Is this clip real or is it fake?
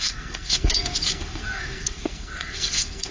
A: fake